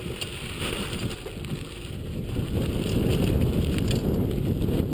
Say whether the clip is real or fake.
real